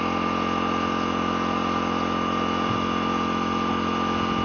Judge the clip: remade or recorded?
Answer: recorded